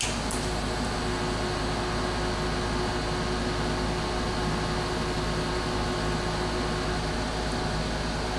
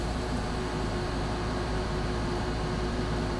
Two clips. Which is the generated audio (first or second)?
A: second